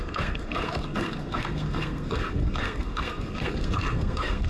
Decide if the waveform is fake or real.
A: fake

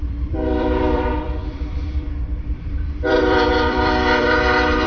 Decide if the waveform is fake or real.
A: fake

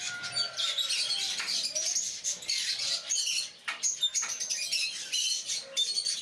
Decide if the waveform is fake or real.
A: real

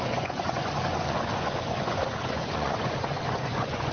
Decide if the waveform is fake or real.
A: fake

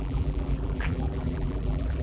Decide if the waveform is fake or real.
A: fake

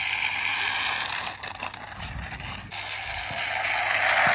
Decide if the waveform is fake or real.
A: real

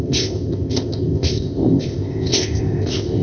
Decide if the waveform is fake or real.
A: fake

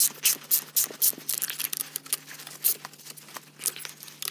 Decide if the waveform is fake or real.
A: real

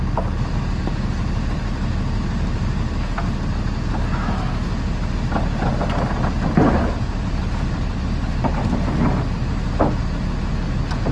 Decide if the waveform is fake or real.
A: real